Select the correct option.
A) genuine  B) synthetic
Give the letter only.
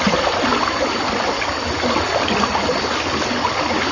A